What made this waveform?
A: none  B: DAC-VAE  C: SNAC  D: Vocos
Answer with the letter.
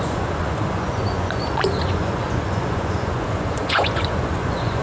D